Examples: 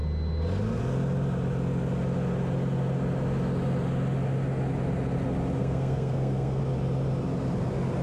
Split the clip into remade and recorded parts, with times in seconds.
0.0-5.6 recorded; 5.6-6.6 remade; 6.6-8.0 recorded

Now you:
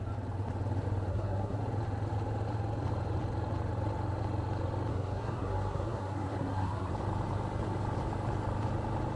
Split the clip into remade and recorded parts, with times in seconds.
0.0-1.1 recorded; 1.1-1.6 remade; 1.6-4.9 recorded; 4.9-6.9 remade; 6.9-9.2 recorded